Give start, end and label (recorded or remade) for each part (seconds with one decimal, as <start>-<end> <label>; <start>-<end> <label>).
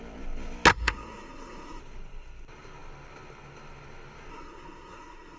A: 0.0-0.7 recorded; 0.7-1.8 remade; 1.8-4.3 recorded; 4.3-5.4 remade